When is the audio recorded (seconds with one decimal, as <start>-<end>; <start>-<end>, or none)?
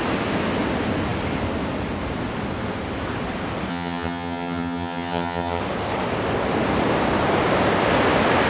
0.0-3.7; 5.6-8.5